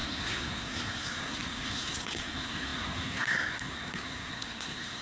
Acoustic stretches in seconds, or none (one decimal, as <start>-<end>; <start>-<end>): none